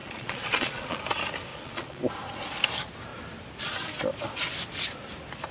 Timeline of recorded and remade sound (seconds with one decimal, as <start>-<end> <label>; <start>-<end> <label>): 0.0-1.0 remade; 1.0-1.5 recorded; 1.5-2.0 remade; 2.0-5.5 recorded